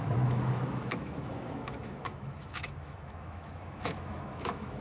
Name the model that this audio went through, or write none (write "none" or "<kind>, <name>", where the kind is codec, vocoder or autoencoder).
autoencoder, DAC-VAE